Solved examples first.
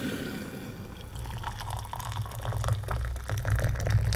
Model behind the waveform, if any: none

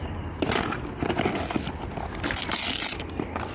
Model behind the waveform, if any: none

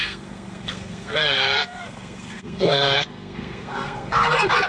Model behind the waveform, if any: codec, SNAC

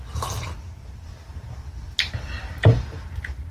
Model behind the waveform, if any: none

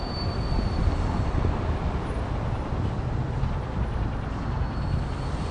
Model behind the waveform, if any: none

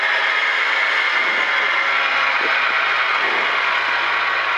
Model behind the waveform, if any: none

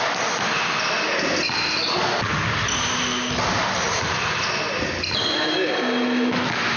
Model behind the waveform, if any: none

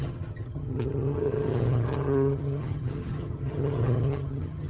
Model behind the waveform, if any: vocoder, HiFi-GAN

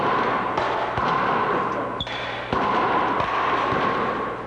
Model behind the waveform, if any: none